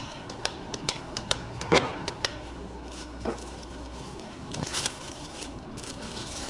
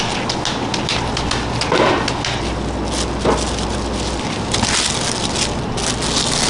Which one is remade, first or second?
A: first